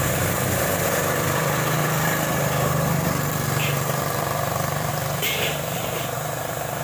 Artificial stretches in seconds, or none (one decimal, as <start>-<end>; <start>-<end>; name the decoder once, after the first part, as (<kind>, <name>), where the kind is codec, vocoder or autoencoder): 0.0-6.8 (vocoder, BigVGAN v2)